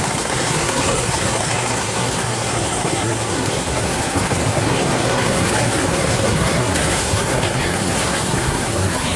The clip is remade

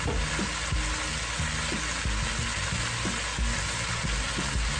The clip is recorded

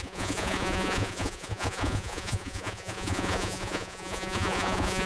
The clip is remade